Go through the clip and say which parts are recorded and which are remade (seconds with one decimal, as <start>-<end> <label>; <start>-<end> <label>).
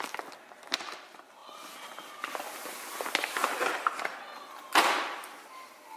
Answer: 0.0-6.0 recorded